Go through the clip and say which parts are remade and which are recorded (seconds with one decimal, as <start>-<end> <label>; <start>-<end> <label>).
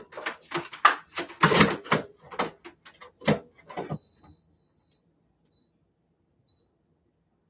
0.0-7.5 recorded